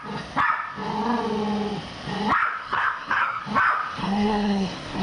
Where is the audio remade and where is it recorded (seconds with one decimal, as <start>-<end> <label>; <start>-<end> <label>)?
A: 0.0-2.6 recorded; 2.6-3.4 remade; 3.4-4.0 recorded; 4.0-5.0 remade